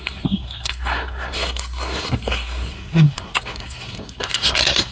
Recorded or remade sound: remade